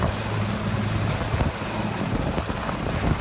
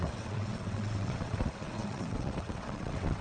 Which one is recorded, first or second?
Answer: first